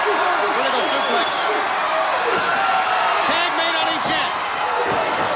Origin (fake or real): real